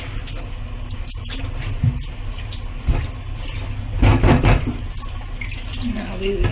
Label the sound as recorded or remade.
recorded